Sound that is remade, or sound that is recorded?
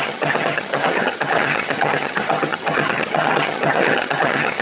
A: remade